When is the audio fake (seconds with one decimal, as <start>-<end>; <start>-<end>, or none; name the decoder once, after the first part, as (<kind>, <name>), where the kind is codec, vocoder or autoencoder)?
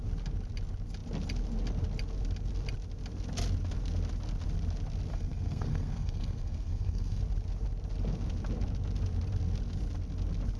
5.1-7.2 (codec, SNAC)